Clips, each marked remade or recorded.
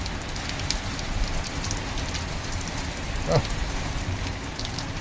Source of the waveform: recorded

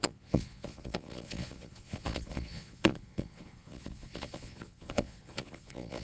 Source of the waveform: remade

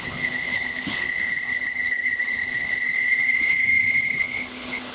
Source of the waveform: remade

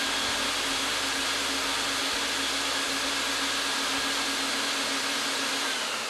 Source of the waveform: recorded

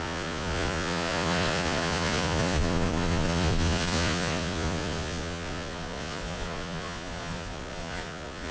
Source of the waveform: remade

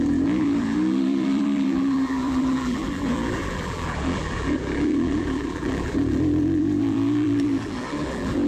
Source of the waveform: remade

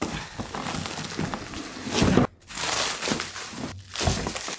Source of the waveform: recorded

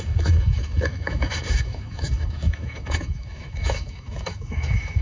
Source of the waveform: remade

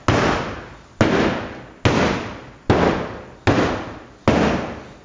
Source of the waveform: recorded